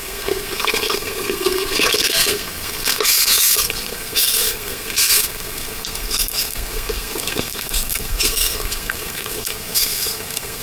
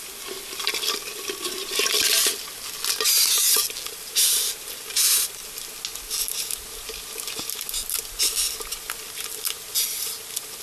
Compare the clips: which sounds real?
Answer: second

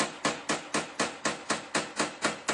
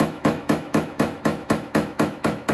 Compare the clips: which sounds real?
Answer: first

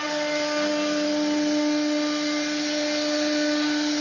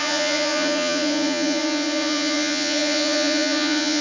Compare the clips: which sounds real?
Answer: first